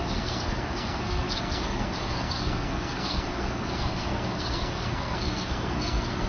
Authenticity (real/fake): fake